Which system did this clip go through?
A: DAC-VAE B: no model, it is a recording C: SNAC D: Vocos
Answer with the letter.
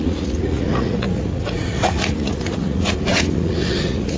D